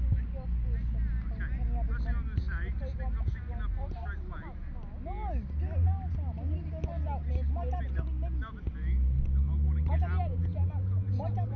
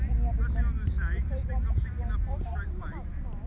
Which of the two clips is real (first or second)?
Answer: first